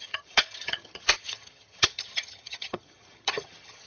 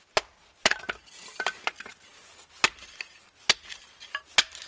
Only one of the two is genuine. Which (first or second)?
second